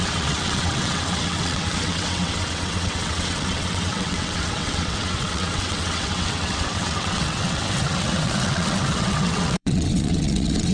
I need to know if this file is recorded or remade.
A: remade